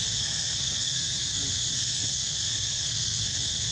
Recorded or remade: remade